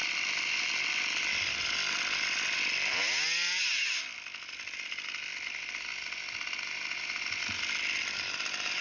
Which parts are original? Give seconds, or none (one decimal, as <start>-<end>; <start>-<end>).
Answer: 0.0-8.8